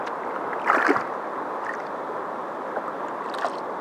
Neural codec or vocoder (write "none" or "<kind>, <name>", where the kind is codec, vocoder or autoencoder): vocoder, BigVGAN v2